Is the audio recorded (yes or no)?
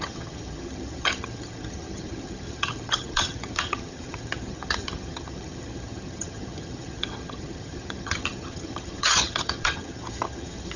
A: no